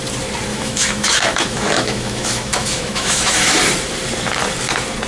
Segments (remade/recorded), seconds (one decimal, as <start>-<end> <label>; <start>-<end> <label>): 0.0-0.5 recorded; 0.5-3.6 remade; 3.6-5.1 recorded